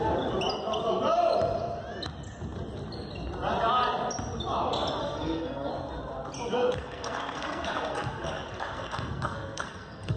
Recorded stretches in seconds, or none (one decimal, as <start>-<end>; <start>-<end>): 0.0-5.0; 5.7-6.8